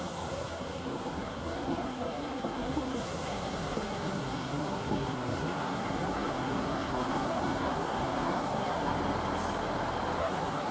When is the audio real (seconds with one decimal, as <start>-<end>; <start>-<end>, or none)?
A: 8.9-10.2